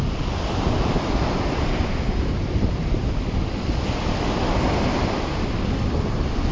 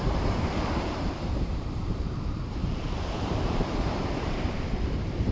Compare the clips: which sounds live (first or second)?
first